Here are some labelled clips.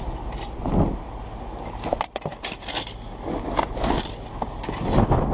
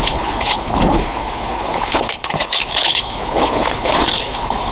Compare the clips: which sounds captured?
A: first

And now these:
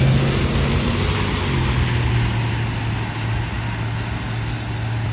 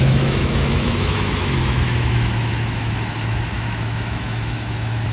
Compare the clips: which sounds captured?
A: first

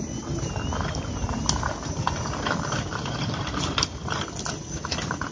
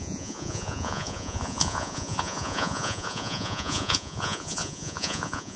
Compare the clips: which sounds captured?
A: first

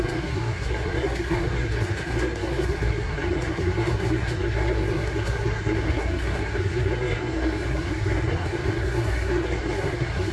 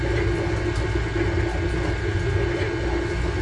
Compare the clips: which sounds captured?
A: second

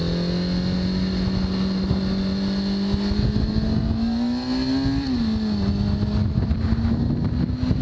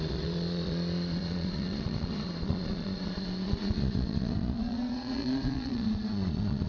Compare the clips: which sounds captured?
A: first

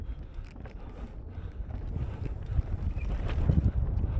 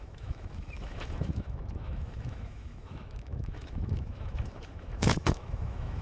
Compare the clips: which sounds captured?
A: first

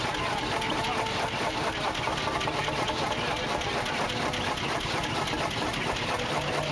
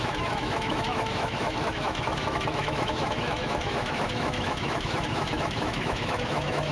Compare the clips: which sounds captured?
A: first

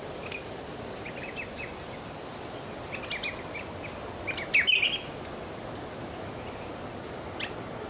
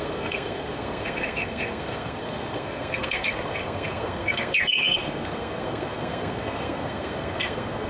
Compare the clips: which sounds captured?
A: first